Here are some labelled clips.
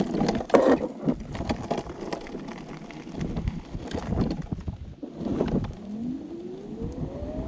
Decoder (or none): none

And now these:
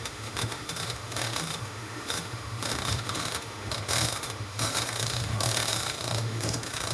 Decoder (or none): autoencoder, DAC-VAE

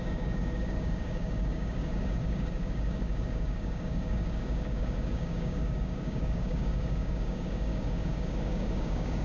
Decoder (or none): codec, DAC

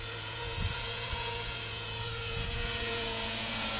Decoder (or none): vocoder, Vocos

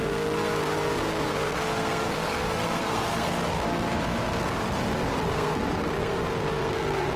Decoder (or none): codec, SNAC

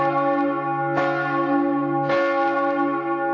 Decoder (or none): none